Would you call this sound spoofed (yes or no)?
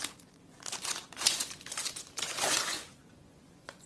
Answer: yes